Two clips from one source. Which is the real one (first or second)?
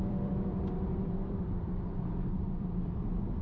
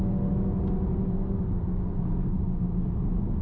second